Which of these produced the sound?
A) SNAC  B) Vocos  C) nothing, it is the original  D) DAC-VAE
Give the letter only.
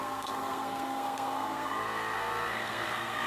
A